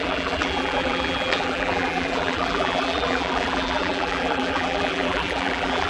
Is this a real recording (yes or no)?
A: no